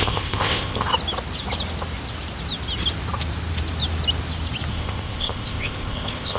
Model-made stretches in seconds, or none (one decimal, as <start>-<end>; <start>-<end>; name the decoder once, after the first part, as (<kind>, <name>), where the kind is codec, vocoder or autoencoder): 0.0-0.9 (codec, ZipCodec); 4.7-6.4